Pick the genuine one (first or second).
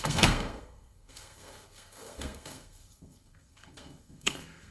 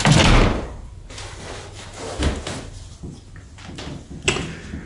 second